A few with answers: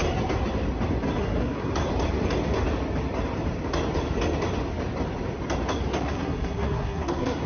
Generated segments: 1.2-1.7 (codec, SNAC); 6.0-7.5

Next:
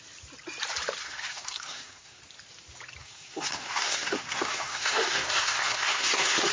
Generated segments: 1.0-2.2 (codec, SNAC); 3.0-6.5

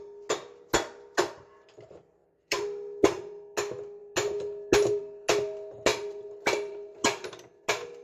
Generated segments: none

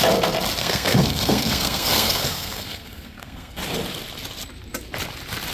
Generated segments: 0.6-3.6 (codec, SNAC)

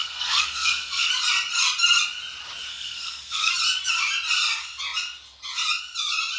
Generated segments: 0.0-1.1 (codec, SNAC); 2.7-3.5

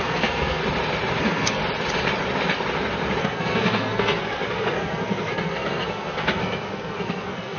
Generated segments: 0.0-0.6 (codec, SNAC); 1.2-1.6; 3.2-7.6

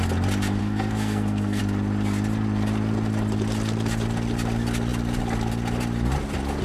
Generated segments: 0.6-1.6 (codec, SNAC)